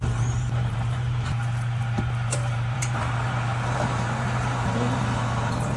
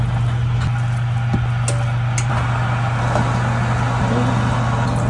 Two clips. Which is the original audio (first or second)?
second